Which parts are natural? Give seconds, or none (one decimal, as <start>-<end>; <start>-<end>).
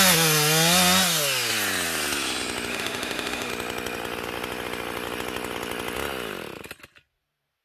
0.0-2.7; 3.5-7.6